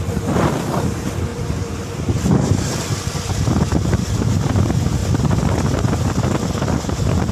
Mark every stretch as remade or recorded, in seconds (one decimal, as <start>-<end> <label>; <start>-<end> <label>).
0.0-5.0 remade; 5.0-6.2 recorded; 6.2-7.3 remade